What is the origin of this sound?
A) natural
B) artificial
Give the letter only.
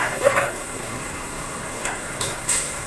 B